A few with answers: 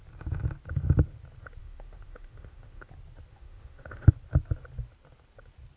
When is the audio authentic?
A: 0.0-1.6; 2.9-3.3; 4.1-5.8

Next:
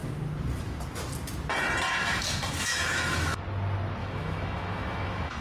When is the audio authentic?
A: 0.0-2.0; 3.4-4.0

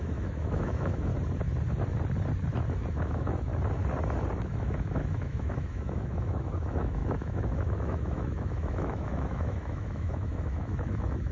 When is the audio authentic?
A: 1.1-2.9; 3.5-4.4

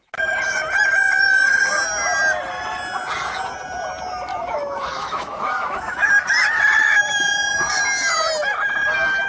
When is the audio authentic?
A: 0.0-4.3; 6.1-9.3

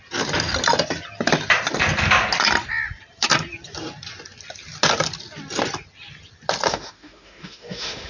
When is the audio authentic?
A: 0.0-6.7

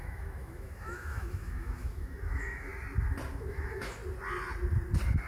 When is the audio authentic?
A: 2.7-3.3; 4.0-5.3

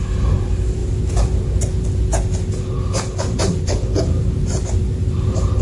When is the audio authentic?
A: 0.0-5.6